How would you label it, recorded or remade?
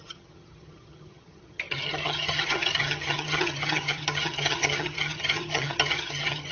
remade